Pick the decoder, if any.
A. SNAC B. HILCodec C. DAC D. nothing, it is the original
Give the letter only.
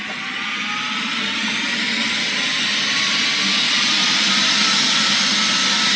D